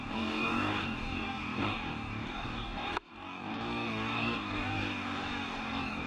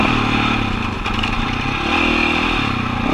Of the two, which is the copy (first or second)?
first